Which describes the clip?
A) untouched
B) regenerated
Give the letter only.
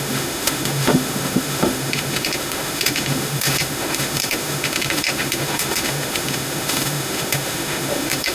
B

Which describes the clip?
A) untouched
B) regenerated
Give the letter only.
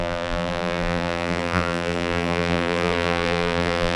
B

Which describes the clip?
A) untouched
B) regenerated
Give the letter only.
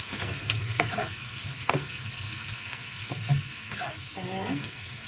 B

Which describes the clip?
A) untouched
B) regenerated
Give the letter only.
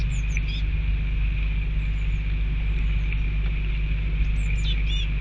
A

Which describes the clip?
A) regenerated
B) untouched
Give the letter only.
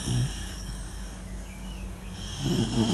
A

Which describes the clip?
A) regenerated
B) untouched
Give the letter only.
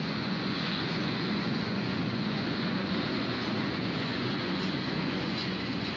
A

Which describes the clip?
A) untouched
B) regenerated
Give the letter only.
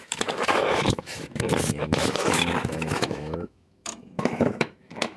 B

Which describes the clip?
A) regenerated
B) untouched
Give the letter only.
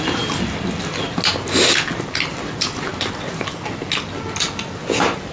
B